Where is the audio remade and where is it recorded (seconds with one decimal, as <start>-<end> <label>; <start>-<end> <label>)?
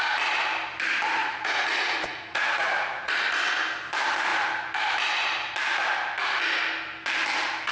0.0-1.2 recorded; 1.2-3.2 remade; 3.2-7.7 recorded